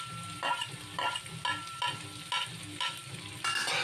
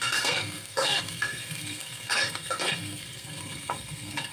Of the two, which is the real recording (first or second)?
first